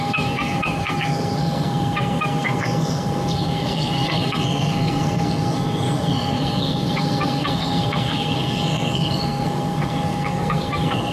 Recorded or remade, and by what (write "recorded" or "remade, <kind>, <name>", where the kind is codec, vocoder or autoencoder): remade, codec, SNAC